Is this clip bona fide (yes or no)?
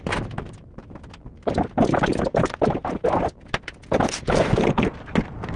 yes